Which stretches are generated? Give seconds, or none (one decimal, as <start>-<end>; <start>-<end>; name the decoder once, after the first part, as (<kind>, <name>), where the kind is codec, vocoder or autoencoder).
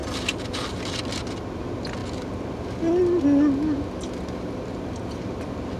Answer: none